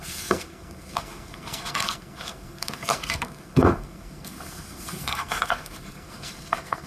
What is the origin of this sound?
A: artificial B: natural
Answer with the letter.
A